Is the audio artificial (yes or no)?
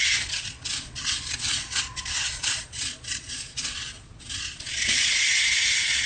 yes